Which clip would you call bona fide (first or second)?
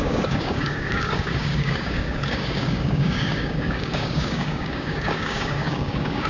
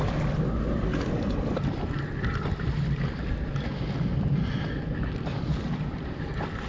second